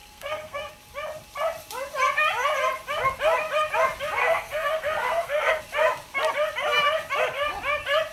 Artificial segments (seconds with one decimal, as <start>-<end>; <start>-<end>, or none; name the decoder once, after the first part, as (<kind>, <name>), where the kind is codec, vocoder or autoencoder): 0.0-0.7 (codec, SNAC); 4.2-5.6